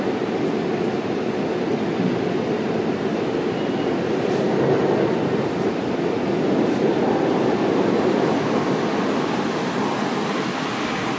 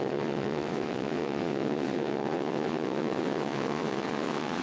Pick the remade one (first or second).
second